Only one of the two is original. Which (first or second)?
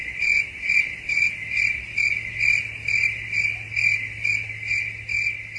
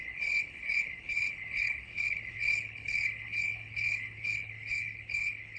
first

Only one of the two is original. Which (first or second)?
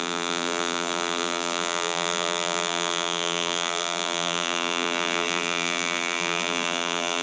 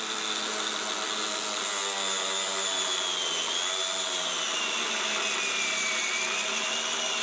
second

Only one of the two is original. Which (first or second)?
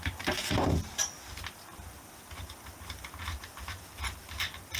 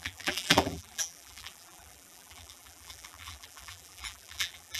first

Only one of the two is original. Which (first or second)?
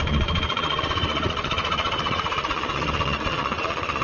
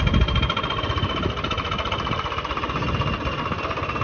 second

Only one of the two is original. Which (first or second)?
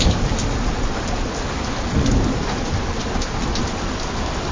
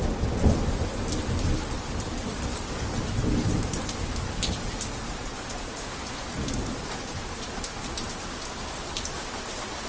second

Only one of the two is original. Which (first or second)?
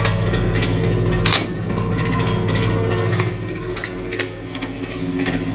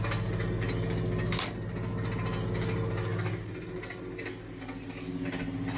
second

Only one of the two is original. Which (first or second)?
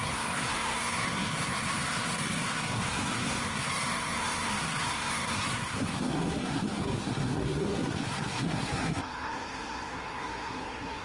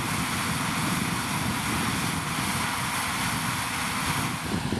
second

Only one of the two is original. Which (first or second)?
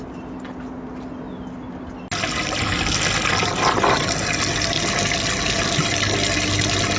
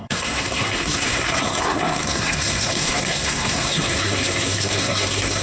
first